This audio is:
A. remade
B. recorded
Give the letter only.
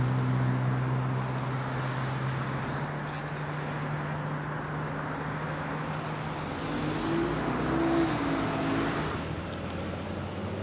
B